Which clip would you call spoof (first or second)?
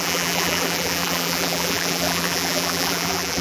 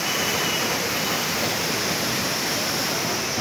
first